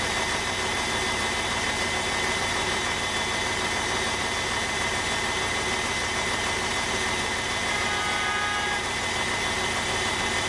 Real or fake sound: real